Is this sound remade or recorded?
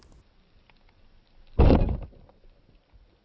recorded